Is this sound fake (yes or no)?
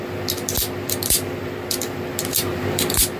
no